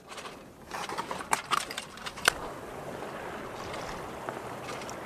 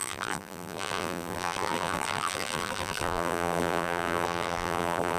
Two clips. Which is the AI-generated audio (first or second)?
second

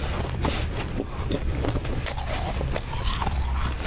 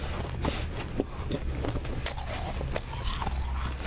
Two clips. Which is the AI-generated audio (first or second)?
first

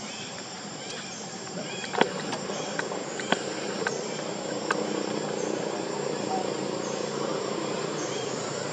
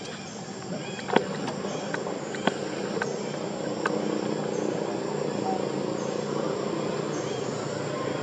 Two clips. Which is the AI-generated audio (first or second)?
first